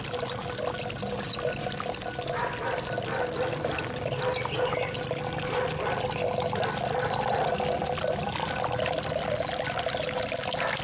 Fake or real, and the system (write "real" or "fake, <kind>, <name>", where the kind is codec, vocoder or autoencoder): real